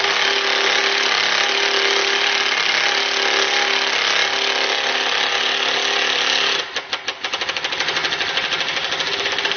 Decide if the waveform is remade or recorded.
recorded